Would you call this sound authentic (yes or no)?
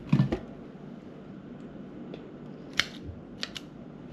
yes